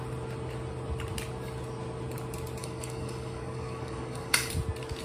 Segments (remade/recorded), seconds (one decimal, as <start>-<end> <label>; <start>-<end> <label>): 0.0-2.6 recorded; 2.6-4.5 remade; 4.5-5.0 recorded

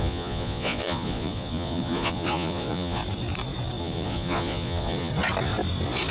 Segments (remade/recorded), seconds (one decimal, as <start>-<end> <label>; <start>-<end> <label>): 0.0-3.0 remade; 3.0-3.8 recorded; 3.8-5.1 remade; 5.1-6.1 recorded

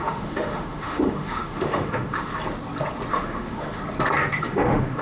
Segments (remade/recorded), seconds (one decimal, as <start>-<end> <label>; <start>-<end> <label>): 0.0-2.3 remade; 2.3-3.1 recorded; 3.1-3.8 remade; 3.8-4.4 recorded; 4.4-5.0 remade